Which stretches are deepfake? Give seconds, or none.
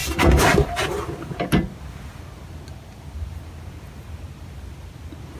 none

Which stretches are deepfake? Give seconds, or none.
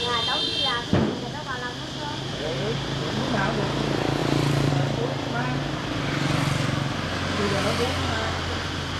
2.3-3.4 (vocoder, BigVGAN v2); 4.2-4.7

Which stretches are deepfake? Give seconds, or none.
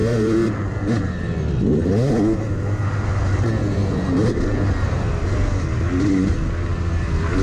0.0-0.5 (vocoder, BigVGAN v2)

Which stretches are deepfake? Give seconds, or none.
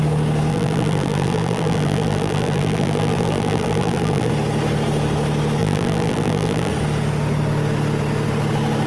0.5-4.3 (vocoder, BigVGAN v2); 5.6-6.7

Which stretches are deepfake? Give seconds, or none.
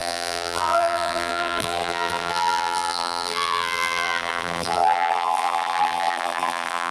0.0-6.9 (vocoder, BigVGAN v2)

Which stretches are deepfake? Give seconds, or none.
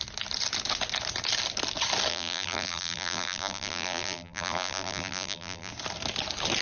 2.1-5.7 (vocoder, BigVGAN v2)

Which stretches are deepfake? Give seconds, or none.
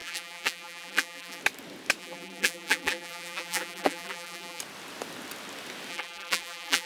0.0-1.4 (vocoder, BigVGAN v2); 2.0-4.6; 5.9-6.9